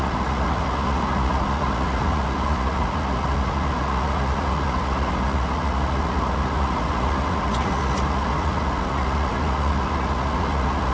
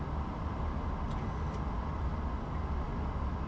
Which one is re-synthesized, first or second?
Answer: first